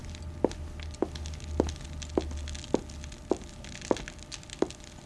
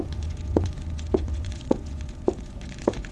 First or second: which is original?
first